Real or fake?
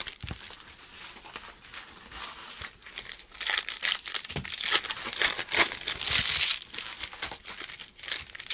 real